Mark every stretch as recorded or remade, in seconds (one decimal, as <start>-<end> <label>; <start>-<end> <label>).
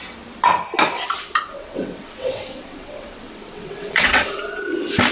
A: 0.0-1.5 recorded; 1.5-4.6 remade; 4.6-5.1 recorded